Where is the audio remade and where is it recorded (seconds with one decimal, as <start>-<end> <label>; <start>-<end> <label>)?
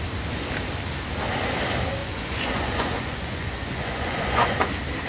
0.0-2.0 recorded; 2.0-4.6 remade; 4.6-5.1 recorded